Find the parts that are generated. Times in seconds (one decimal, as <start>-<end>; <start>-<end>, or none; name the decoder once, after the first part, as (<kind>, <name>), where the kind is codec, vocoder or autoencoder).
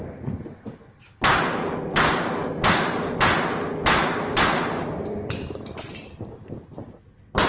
none